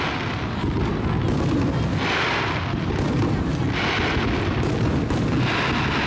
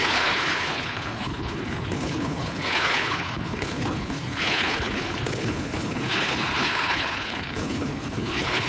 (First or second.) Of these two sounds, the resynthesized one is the second